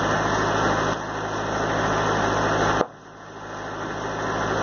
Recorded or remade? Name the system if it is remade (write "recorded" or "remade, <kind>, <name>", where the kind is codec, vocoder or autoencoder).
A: recorded